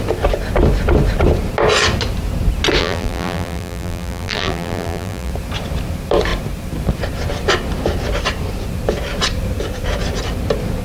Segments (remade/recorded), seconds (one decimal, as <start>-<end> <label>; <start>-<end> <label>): 0.0-2.8 recorded; 2.8-5.3 remade; 5.3-10.8 recorded